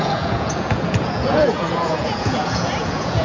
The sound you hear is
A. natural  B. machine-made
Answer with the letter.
B